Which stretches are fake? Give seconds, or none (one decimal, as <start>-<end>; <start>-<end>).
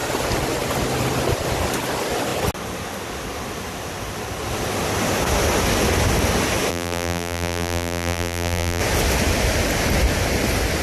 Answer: 6.7-8.8